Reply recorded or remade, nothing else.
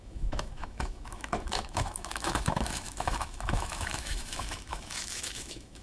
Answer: remade